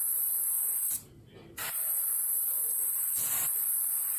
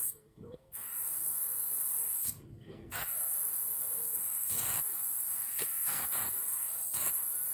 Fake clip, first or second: second